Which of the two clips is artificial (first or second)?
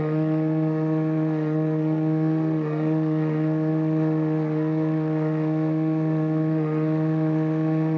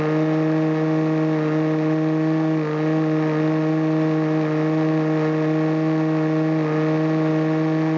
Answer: first